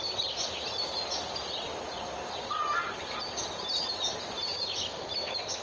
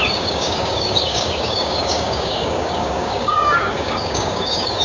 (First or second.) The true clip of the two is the first